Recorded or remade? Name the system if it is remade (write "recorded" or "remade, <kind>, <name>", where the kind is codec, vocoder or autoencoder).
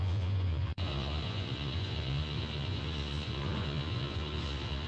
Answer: remade, vocoder, Vocos